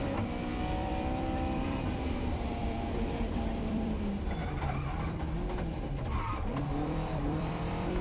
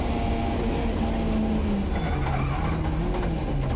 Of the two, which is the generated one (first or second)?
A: first